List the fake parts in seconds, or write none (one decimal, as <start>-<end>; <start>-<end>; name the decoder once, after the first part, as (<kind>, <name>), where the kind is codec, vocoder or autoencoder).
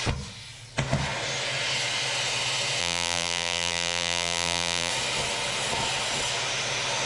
2.8-4.9 (vocoder, BigVGAN v2)